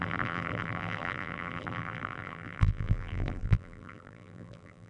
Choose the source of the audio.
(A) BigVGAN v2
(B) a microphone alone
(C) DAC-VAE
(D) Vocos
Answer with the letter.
A